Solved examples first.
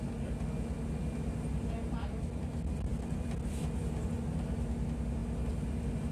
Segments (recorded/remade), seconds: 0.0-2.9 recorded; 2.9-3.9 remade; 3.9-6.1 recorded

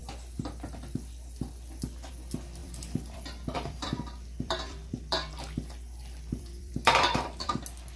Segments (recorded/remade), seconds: 0.0-2.6 recorded; 2.6-5.3 remade; 5.3-6.3 recorded; 6.3-7.5 remade; 7.5-8.0 recorded

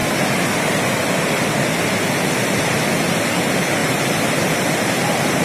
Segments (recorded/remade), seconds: 0.0-3.2 remade; 3.2-3.8 recorded; 3.8-4.7 remade; 4.7-5.4 recorded

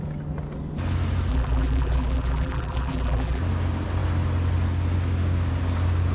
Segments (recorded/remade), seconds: 0.0-1.3 recorded; 1.3-3.4 remade; 3.4-6.1 recorded

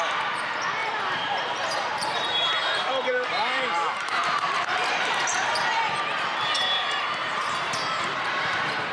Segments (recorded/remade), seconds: 0.0-0.8 recorded; 0.8-6.0 remade; 6.0-7.2 recorded; 7.2-8.9 remade